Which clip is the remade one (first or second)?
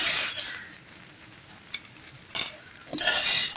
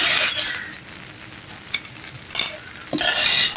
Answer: first